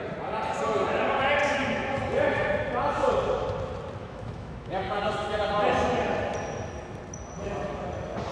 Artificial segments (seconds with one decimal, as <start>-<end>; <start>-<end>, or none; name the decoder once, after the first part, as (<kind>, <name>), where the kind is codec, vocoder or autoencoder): 1.4-1.9 (autoencoder, DAC-VAE); 4.0-5.5